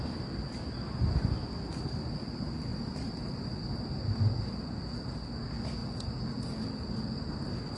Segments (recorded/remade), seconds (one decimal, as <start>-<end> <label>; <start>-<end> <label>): 0.0-2.7 recorded; 2.7-3.3 remade; 3.3-7.8 recorded